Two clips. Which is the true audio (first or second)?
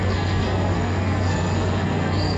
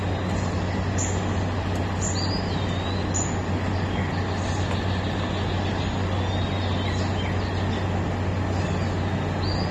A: second